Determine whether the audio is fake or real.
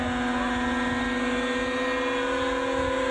real